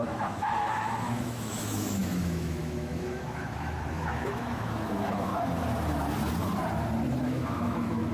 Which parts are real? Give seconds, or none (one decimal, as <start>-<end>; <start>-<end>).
5.3-7.2